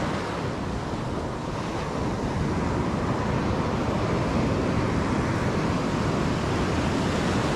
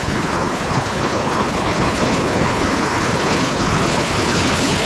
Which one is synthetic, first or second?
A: second